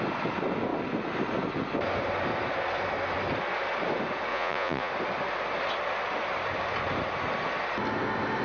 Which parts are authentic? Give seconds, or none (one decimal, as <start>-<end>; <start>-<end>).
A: 0.0-4.3; 4.9-8.4